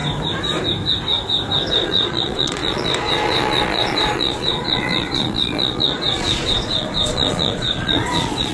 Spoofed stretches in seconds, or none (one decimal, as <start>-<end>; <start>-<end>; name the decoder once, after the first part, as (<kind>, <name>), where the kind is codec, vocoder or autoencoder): 1.7-8.5 (vocoder, Vocos)